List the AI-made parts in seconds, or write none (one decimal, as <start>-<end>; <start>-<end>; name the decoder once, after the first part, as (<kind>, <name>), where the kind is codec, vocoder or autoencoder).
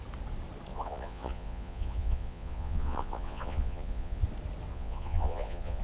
0.7-4.2 (vocoder, Vocos); 4.7-5.8